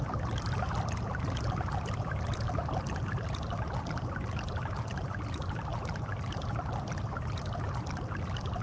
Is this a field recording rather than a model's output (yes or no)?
no